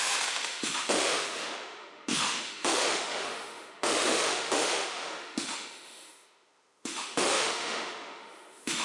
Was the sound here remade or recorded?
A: remade